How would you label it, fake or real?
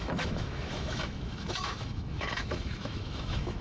fake